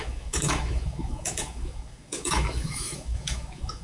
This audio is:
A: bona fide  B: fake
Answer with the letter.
B